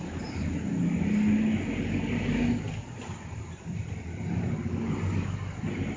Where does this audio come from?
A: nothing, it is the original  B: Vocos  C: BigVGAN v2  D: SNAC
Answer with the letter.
A